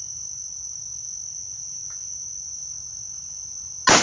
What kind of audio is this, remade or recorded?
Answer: recorded